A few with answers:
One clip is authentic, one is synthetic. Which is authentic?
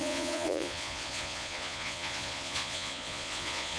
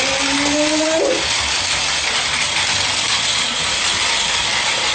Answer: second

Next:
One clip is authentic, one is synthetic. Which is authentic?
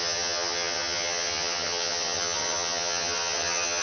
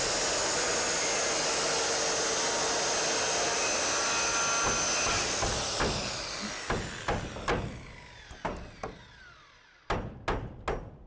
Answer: second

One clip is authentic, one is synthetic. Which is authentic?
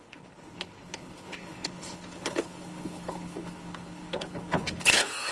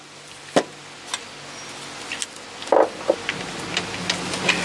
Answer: second